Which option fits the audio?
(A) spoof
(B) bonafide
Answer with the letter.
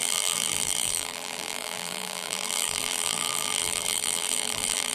A